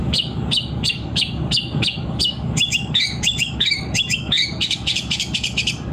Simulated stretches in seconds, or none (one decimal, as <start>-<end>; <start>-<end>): 0.0-5.9